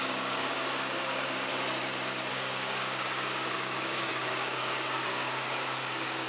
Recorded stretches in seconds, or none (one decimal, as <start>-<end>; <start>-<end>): 1.5-2.3